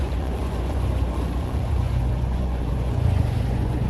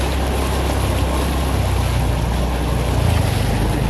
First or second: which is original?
second